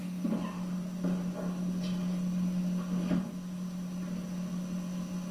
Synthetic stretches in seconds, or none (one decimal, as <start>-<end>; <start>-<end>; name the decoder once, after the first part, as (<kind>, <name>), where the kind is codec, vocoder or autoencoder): none